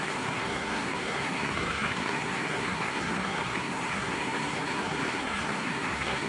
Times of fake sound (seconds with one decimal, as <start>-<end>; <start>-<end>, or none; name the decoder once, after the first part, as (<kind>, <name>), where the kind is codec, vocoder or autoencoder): 0.0-6.3 (codec, SNAC)